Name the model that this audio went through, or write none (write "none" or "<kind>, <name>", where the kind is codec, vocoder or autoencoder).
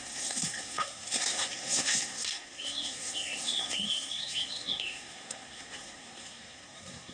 codec, SNAC